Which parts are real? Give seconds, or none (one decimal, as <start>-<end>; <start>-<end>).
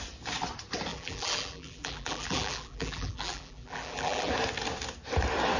0.0-0.9; 4.3-5.6